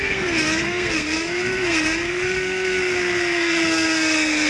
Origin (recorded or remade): remade